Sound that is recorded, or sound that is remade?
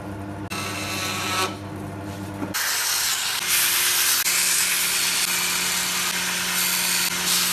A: recorded